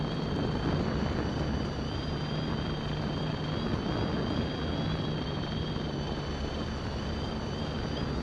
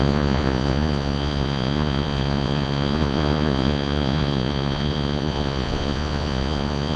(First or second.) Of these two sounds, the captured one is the first